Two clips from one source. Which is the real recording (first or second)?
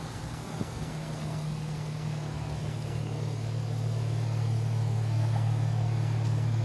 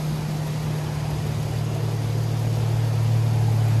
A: second